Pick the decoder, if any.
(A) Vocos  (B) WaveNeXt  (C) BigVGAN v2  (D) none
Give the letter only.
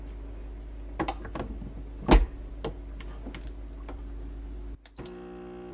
D